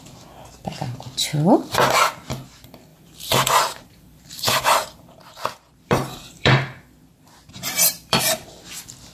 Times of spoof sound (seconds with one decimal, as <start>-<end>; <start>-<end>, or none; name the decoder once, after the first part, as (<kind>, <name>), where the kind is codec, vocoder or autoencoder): 1.3-2.0 (vocoder, BigVGAN v2); 2.9-8.2

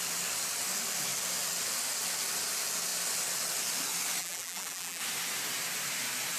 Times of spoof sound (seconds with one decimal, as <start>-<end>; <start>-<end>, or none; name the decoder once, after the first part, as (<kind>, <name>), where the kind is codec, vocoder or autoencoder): 4.2-5.0 (vocoder, BigVGAN v2)

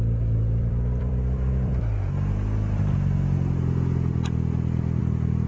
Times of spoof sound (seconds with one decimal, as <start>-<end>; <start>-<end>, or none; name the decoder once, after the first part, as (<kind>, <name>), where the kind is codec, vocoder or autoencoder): 0.0-1.7 (vocoder, BigVGAN v2); 5.0-5.5

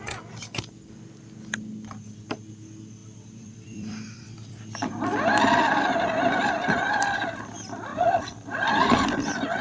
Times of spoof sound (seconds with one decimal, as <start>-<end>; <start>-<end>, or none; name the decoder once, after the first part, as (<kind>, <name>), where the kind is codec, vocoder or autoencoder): 3.0-4.9 (vocoder, BigVGAN v2); 7.9-8.9